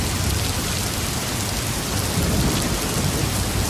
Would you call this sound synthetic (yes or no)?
no